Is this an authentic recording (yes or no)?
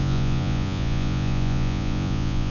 no